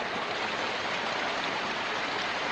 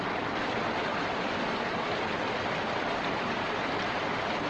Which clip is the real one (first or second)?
first